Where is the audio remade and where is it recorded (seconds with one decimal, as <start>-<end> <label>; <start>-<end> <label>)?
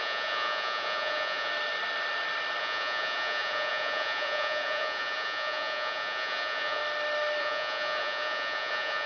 0.0-1.5 remade; 1.5-2.6 recorded; 2.6-6.8 remade; 6.8-7.4 recorded; 7.4-9.1 remade